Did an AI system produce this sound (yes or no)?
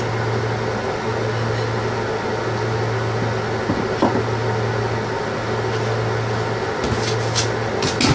no